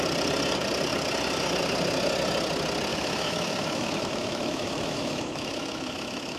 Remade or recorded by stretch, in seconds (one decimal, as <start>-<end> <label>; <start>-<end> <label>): 0.0-2.9 recorded; 2.9-6.4 remade